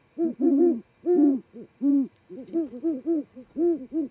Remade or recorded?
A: remade